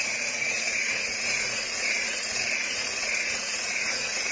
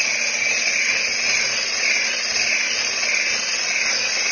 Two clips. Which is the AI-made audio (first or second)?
first